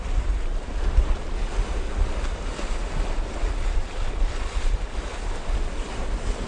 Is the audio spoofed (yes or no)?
no